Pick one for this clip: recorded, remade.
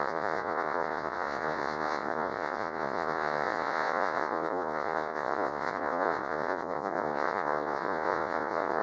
remade